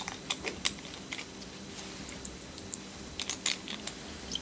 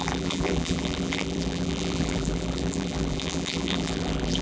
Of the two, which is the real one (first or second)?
first